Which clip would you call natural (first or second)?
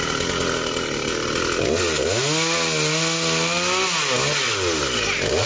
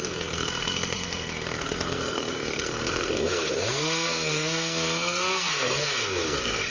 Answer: first